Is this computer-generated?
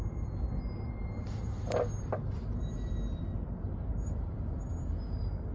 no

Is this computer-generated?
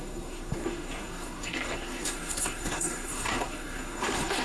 yes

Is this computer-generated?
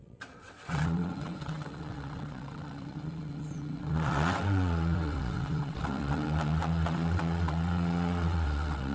yes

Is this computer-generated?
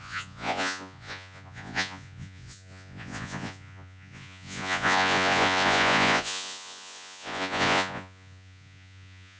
yes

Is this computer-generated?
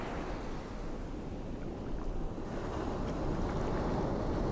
no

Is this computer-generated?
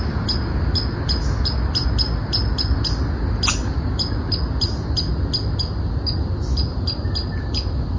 no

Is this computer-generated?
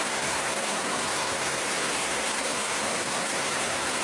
yes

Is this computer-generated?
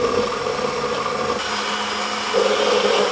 no